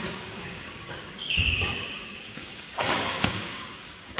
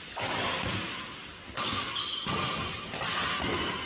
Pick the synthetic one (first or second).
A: first